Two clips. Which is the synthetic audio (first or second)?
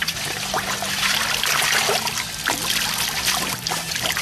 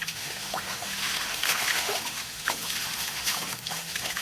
second